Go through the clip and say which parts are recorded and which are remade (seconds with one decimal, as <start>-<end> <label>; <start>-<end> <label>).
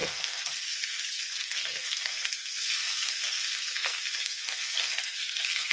0.0-5.7 remade